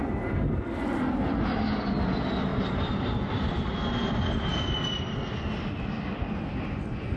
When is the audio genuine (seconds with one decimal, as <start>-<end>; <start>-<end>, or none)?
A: 1.0-2.5; 6.8-7.2